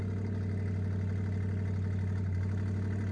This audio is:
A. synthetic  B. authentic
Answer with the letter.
B